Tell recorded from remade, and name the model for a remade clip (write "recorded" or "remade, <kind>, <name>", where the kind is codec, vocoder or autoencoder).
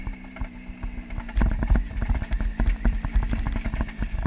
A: recorded